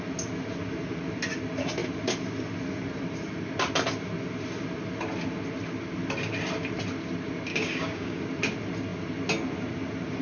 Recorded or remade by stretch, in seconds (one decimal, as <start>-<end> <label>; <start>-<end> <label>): 0.0-7.5 recorded; 7.5-8.2 remade; 8.2-10.2 recorded